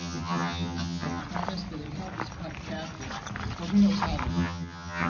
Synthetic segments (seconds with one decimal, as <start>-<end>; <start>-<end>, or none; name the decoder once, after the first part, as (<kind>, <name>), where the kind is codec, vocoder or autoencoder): 0.0-1.2 (vocoder, HiFi-GAN); 4.3-5.1

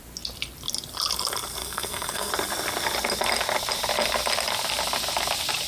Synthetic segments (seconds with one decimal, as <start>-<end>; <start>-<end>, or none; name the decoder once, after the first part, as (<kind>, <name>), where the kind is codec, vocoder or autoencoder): 1.6-2.3 (codec, SNAC)

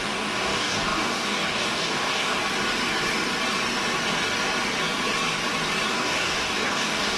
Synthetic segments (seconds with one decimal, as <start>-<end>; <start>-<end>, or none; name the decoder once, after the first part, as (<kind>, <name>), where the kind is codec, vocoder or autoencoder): 0.0-2.4 (codec, DAC); 5.9-7.2

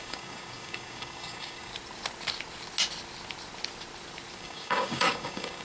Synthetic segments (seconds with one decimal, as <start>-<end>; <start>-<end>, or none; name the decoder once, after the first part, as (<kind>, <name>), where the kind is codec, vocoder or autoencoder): 0.0-1.7 (codec, DAC); 4.4-5.6

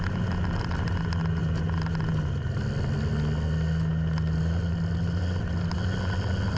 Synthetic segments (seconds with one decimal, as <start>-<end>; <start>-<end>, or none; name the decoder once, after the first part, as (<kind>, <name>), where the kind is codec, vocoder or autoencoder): none

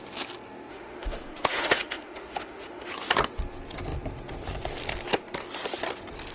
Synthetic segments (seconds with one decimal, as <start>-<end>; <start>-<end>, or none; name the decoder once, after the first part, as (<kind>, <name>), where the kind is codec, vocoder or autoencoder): 0.7-2.9 (autoencoder, DAC-VAE)

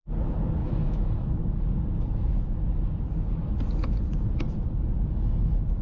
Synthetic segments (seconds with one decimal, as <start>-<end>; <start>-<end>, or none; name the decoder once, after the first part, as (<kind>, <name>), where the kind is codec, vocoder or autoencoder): 0.6-1.4 (autoencoder, DAC-VAE)